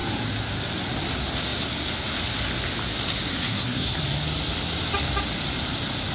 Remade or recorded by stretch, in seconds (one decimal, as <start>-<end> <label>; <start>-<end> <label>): 0.0-3.3 recorded; 3.3-4.0 remade; 4.0-6.1 recorded